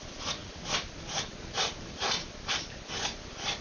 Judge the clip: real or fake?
real